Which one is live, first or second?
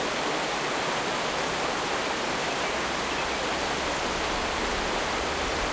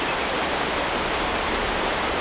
first